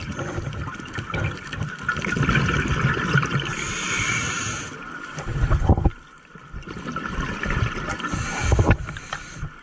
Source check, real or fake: real